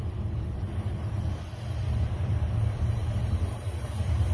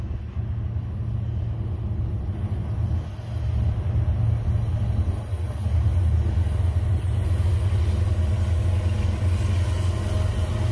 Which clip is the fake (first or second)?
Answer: first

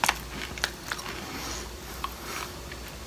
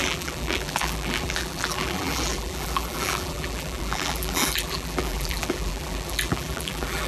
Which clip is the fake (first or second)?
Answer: second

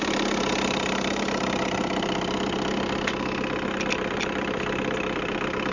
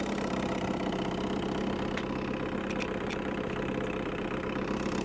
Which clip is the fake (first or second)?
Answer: first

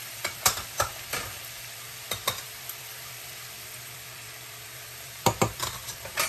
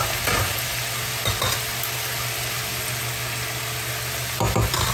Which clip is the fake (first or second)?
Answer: first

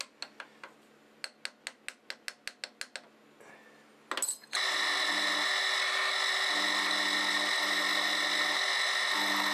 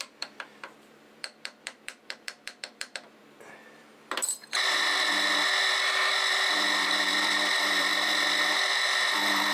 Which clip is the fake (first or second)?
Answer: second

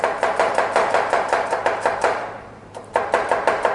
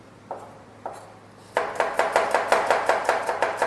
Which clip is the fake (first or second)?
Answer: first